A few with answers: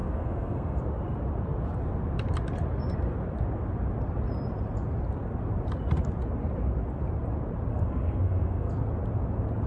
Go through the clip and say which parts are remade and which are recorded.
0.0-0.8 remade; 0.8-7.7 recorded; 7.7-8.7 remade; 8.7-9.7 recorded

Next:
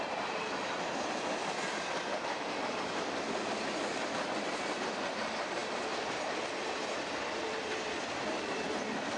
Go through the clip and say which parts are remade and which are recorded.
0.0-9.2 recorded